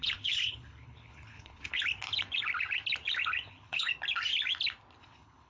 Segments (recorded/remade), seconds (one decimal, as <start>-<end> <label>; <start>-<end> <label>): 0.0-1.8 remade; 1.8-3.5 recorded; 3.5-3.9 remade; 3.9-5.0 recorded; 5.0-5.5 remade